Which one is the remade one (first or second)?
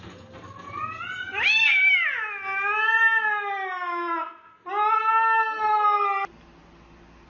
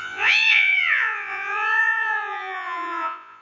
second